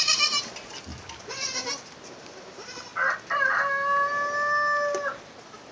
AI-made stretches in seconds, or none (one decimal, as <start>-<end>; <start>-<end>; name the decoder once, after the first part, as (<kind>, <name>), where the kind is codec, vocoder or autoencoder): 0.0-0.9 (vocoder, BigVGAN v2); 2.1-2.9